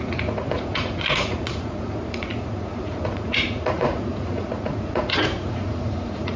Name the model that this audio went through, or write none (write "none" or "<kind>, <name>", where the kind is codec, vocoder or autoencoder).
vocoder, Vocos